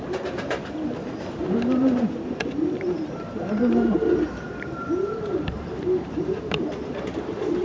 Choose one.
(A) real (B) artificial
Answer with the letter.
B